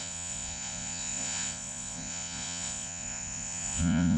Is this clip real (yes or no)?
no